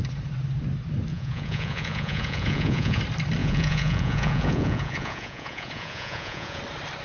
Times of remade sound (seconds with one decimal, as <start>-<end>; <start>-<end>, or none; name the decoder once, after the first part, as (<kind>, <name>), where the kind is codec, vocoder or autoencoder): 1.1-3.0 (vocoder, Vocos); 3.4-6.6